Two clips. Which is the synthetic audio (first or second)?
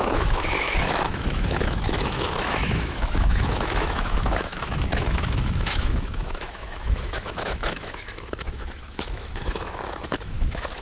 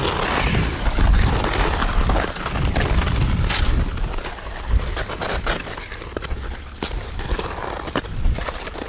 first